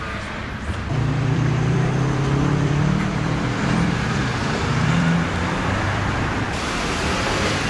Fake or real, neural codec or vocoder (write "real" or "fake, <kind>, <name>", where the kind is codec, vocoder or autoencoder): fake, vocoder, BigVGAN v2